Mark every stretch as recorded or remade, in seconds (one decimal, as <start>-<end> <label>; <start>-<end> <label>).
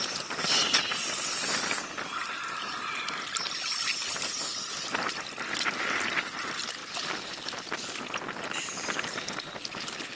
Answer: 0.0-10.2 recorded